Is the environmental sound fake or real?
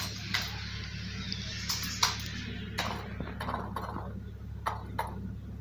real